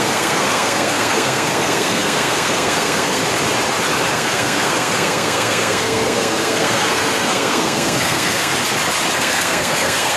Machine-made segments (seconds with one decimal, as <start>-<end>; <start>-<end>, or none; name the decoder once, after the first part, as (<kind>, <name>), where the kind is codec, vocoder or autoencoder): 0.0-3.2 (codec, SNAC); 4.1-8.5; 9.2-10.2